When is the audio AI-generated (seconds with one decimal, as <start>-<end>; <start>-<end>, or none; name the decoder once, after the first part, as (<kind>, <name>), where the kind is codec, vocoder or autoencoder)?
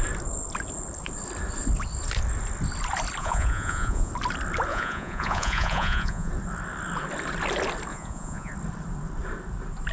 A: 3.2-4.1 (vocoder, Vocos); 4.7-6.3; 7.9-8.5